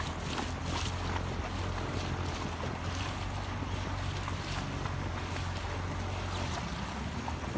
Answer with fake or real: real